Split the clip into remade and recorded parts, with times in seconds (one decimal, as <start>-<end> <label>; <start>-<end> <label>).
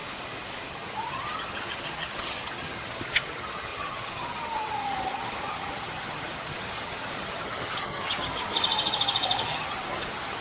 0.0-0.7 recorded; 0.7-10.4 remade